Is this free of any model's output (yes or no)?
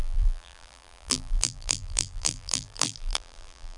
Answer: no